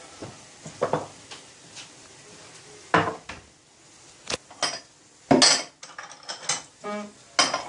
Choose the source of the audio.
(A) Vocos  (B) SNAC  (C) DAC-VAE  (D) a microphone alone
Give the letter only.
D